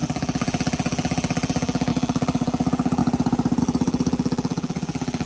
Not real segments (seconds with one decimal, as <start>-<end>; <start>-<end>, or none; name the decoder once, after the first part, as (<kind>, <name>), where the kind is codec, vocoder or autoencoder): 0.0-3.0 (vocoder, BigVGAN v2); 3.6-5.3